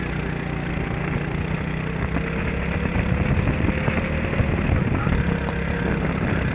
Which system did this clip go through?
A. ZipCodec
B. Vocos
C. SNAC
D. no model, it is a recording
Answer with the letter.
D